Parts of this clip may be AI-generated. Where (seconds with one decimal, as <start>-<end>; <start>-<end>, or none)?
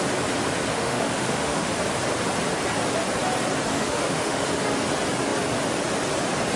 0.7-1.7; 3.7-4.5